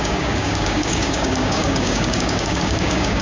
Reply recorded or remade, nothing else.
remade